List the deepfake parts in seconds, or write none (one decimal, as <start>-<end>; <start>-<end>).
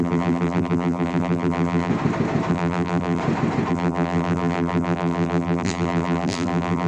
0.0-1.9; 2.5-3.2; 3.7-6.9